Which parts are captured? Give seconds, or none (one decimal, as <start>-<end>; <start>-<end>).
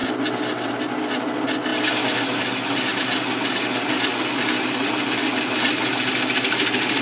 0.0-7.0